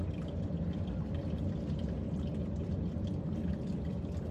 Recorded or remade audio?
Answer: remade